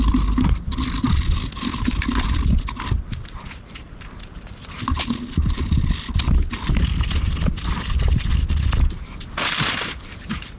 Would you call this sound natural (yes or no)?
yes